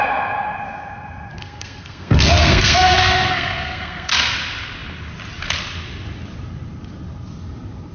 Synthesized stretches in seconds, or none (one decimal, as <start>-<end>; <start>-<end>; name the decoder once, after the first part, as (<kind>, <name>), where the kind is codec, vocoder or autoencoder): 1.3-4.1 (codec, SNAC)